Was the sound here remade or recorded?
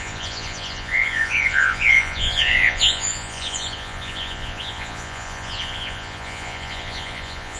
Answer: remade